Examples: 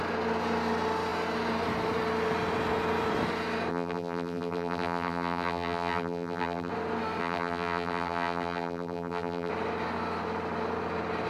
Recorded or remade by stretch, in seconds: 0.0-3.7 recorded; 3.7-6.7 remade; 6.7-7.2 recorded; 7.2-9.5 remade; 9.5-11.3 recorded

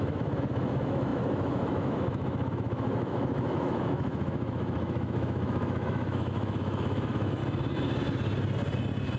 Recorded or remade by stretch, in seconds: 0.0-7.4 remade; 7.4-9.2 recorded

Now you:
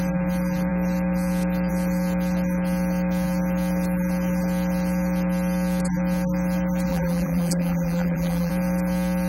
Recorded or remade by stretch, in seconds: 0.0-6.9 recorded; 6.9-8.5 remade; 8.5-9.3 recorded